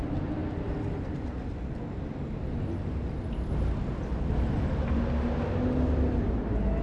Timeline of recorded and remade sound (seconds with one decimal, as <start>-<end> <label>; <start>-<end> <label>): 0.0-6.8 recorded